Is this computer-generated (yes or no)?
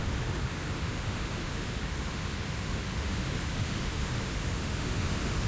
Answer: yes